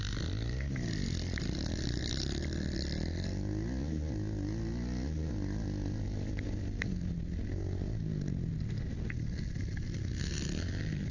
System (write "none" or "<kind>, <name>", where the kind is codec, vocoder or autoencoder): none